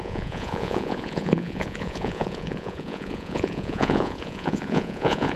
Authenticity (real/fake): fake